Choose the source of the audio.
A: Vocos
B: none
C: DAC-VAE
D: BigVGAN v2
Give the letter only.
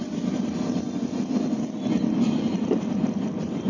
D